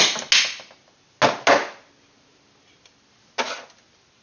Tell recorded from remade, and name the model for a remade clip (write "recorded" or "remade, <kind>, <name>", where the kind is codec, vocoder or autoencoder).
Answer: recorded